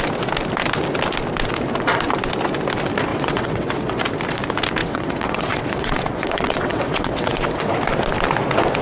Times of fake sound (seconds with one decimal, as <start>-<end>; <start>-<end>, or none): 3.1-4.0; 4.8-7.7